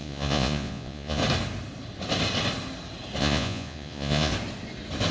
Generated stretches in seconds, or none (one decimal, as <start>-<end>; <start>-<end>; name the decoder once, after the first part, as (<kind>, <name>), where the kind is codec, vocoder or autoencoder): 0.0-1.2 (vocoder, Vocos); 3.2-4.3